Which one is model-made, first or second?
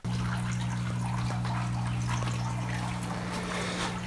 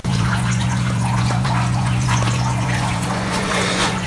second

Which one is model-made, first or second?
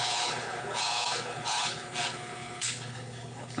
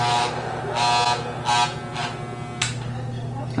first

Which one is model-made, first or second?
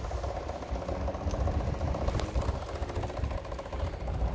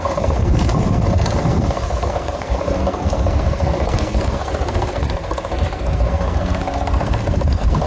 second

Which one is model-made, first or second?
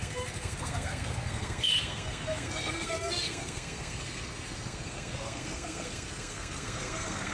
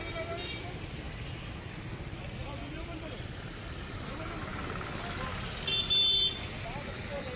first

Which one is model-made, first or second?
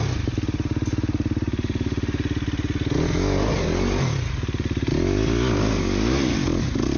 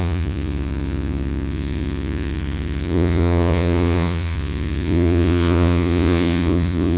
second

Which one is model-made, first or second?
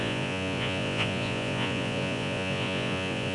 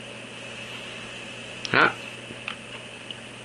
first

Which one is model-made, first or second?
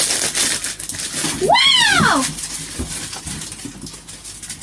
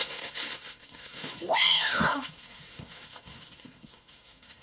second